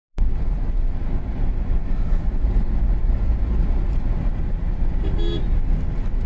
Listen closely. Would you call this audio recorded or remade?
recorded